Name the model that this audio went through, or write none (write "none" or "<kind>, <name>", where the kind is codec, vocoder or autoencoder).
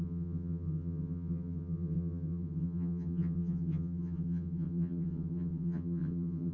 vocoder, HiFi-GAN